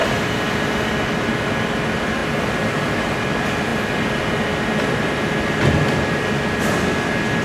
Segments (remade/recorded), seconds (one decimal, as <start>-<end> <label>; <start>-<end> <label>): 0.0-7.4 recorded